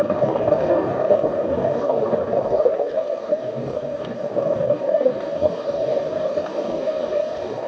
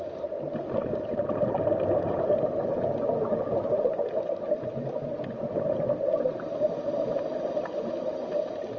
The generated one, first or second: first